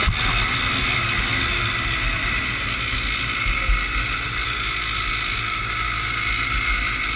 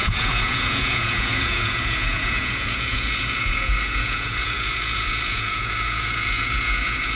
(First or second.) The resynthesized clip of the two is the second